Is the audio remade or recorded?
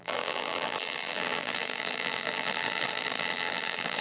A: remade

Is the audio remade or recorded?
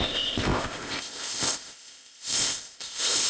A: remade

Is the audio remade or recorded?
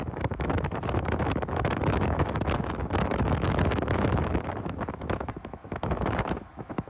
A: remade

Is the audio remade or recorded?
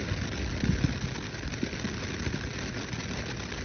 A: recorded